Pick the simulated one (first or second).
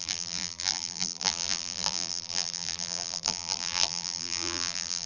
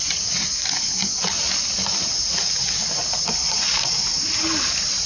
first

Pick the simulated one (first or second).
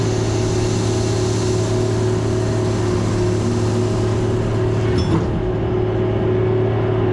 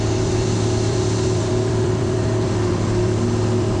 second